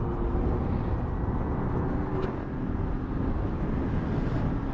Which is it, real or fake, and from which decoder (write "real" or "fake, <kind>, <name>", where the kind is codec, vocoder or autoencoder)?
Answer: real